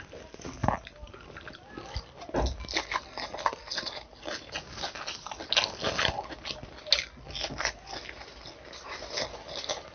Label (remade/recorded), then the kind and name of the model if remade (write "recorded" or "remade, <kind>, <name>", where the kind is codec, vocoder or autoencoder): recorded